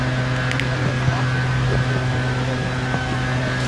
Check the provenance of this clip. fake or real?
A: real